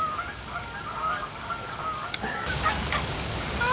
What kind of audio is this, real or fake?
fake